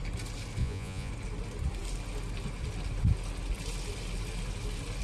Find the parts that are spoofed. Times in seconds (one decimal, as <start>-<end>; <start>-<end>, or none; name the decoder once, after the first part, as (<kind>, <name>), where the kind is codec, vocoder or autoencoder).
0.6-1.1 (vocoder, Vocos)